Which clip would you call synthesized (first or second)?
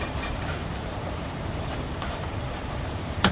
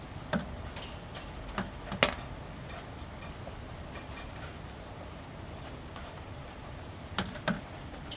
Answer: first